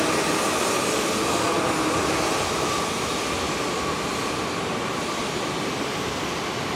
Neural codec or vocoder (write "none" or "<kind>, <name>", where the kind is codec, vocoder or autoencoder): none